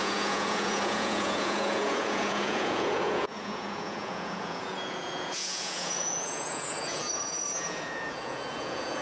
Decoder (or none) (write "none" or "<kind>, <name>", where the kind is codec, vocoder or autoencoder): vocoder, Vocos